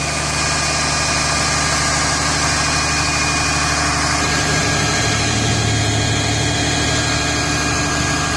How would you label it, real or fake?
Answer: real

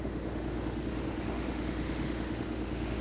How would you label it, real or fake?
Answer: fake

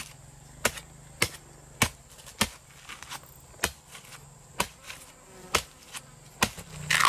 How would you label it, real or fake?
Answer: real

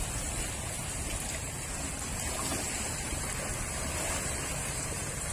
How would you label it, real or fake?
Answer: real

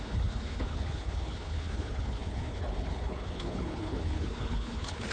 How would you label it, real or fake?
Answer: fake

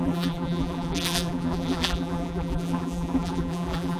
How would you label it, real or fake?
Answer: fake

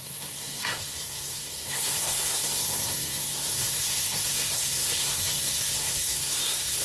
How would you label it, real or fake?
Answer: fake